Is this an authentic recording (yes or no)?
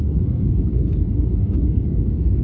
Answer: no